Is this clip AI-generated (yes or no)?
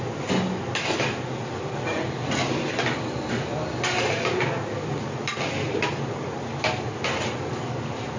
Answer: no